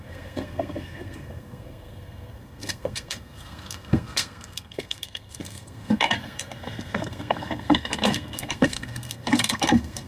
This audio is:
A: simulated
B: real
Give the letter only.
A